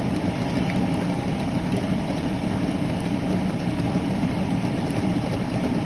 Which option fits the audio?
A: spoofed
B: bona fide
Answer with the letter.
A